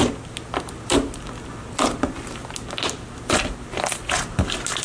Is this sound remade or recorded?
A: recorded